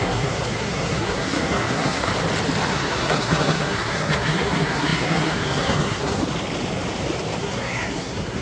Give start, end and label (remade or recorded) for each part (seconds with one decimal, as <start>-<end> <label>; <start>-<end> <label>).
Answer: 0.0-2.1 remade; 2.1-2.7 recorded; 2.7-6.2 remade; 6.2-7.4 recorded; 7.4-8.4 remade